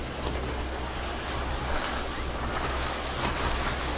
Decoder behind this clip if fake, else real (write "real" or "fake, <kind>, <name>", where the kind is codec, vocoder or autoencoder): real